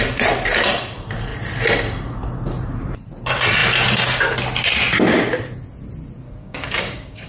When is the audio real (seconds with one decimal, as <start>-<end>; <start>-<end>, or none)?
0.0-6.4